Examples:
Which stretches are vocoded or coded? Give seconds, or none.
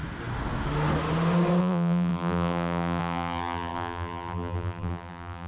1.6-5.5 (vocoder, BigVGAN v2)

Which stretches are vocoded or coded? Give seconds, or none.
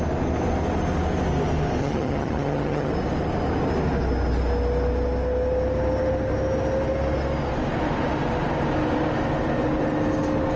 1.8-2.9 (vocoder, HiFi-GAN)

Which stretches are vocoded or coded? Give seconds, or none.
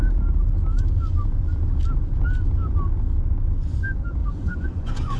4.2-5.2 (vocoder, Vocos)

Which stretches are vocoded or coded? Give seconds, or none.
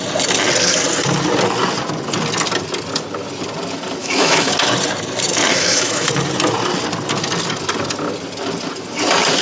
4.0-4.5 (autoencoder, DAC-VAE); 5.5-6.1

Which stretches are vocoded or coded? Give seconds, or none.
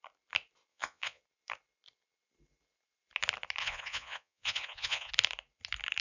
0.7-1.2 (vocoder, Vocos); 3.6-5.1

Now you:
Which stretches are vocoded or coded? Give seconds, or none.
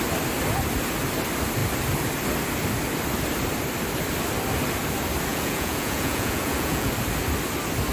5.3-6.9 (vocoder, Vocos)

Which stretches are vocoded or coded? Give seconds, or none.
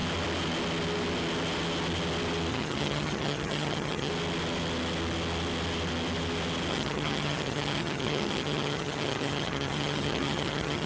2.5-4.1 (vocoder, HiFi-GAN); 6.7-10.9